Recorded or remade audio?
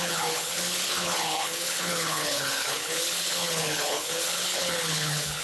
remade